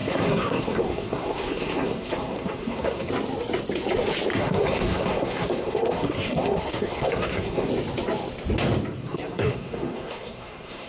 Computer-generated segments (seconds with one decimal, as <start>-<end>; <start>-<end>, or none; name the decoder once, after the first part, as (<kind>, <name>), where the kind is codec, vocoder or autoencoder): 0.0-3.1 (codec, SNAC); 4.3-7.7; 9.0-10.9